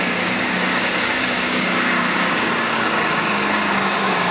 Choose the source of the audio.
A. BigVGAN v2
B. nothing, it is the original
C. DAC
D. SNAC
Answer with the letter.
C